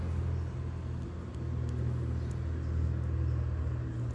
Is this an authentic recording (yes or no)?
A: yes